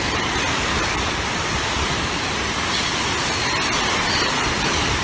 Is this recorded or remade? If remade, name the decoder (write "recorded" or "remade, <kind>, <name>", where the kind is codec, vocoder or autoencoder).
recorded